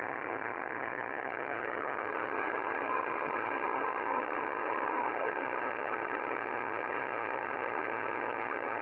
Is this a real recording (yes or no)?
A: no